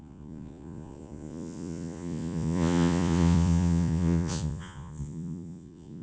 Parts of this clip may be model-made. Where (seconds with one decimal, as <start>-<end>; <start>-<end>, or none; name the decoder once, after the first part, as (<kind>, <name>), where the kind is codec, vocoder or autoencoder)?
0.0-6.0 (vocoder, Vocos)